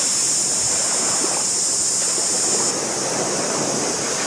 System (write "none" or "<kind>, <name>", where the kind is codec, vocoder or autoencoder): none